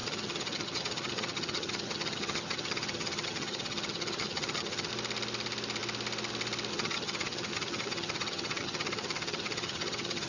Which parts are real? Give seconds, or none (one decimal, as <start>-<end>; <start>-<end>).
4.9-6.7